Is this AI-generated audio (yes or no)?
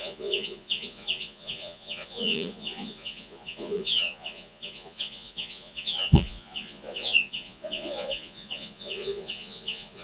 yes